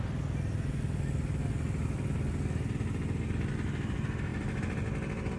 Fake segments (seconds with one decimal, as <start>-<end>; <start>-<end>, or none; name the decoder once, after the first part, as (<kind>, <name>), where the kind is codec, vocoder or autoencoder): none

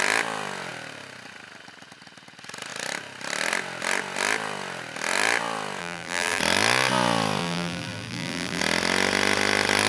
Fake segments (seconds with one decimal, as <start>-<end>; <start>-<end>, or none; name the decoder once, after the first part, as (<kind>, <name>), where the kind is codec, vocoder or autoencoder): 5.8-6.4 (vocoder, BigVGAN v2); 7.4-8.6

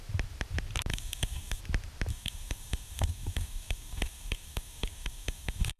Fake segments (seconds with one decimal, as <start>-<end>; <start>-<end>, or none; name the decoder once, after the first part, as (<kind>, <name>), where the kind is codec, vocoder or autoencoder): 0.9-1.6 (codec, DAC); 2.1-5.8

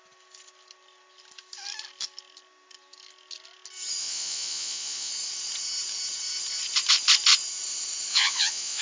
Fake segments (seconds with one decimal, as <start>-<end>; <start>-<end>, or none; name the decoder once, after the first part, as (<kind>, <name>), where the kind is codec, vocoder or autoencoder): 4.0-5.1 (vocoder, Vocos); 8.1-8.8